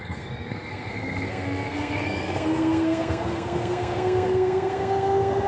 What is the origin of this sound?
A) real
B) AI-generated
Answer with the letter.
B